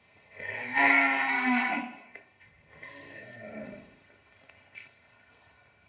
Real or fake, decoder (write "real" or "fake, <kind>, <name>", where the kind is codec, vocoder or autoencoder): fake, codec, SNAC